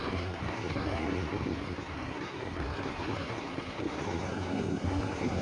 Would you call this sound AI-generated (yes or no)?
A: yes